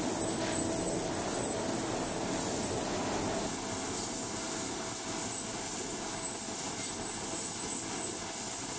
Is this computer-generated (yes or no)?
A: no